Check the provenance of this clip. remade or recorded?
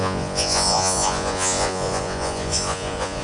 remade